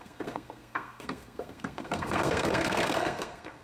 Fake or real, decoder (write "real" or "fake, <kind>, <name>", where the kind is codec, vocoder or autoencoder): fake, codec, SNAC